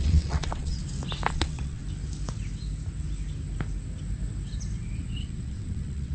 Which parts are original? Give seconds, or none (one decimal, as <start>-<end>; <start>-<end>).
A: 0.8-1.3; 1.8-5.2